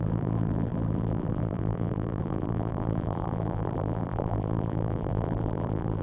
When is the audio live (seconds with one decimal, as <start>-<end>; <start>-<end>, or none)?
none